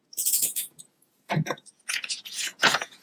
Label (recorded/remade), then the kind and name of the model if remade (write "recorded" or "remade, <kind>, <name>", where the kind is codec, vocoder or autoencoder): remade, vocoder, Vocos